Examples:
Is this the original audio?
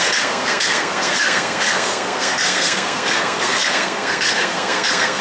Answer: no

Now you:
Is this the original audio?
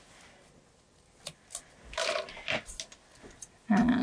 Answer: yes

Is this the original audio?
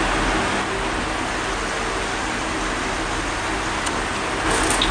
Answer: yes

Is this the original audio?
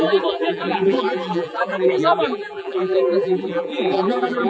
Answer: no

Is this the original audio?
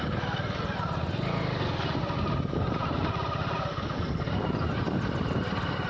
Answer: yes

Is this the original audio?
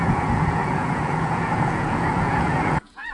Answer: no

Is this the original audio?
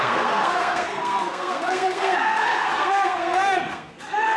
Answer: no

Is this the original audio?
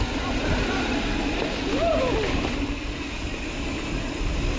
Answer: yes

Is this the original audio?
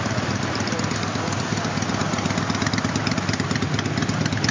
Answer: yes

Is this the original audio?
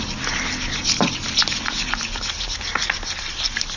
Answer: yes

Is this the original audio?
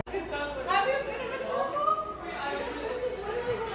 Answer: yes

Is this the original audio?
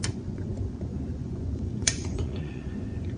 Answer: no